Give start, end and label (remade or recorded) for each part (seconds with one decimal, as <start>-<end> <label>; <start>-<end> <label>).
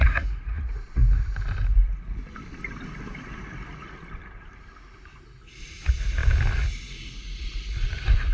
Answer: 0.0-1.0 remade; 1.0-5.6 recorded; 5.6-6.2 remade; 6.2-7.4 recorded; 7.4-8.3 remade